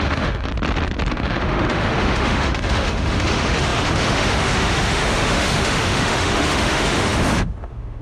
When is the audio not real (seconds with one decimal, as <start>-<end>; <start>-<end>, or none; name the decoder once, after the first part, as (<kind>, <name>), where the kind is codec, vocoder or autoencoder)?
0.0-0.5 (autoencoder, DAC-VAE); 1.1-8.0

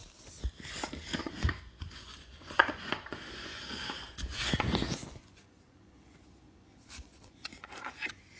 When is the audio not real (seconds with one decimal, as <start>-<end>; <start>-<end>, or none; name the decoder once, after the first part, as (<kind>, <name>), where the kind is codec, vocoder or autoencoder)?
1.2-8.4 (vocoder, Vocos)

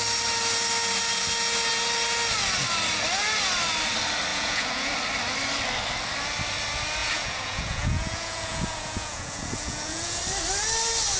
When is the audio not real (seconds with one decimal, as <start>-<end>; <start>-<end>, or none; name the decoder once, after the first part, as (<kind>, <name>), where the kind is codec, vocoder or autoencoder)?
4.3-4.9 (vocoder, Vocos); 7.0-10.2

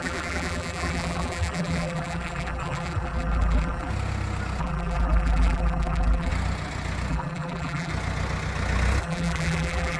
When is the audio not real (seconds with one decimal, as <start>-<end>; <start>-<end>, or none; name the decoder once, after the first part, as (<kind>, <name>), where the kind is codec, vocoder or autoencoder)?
0.0-3.9 (vocoder, BigVGAN v2); 4.6-6.3; 7.1-7.9; 9.0-10.0

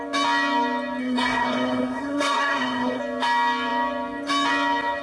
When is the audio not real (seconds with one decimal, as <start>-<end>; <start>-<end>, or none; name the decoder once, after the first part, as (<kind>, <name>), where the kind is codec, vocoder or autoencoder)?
1.0-3.0 (codec, SNAC)

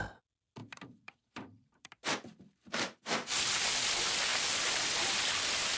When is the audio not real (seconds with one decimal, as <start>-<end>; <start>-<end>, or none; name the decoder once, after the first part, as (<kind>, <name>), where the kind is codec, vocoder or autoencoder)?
0.6-3.0 (vocoder, BigVGAN v2)

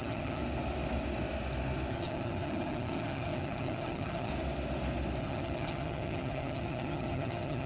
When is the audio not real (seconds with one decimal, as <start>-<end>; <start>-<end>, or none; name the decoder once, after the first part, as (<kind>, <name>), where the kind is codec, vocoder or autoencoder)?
0.0-0.4 (vocoder, HiFi-GAN); 1.9-4.3; 5.2-7.7